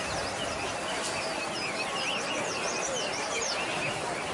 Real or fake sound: real